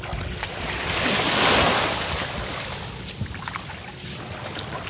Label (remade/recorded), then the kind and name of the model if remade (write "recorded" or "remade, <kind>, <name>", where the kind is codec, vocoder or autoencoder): recorded